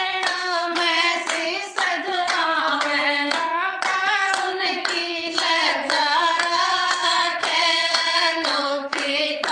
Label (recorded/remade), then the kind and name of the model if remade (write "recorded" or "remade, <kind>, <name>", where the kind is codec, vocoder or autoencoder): remade, vocoder, WaveNeXt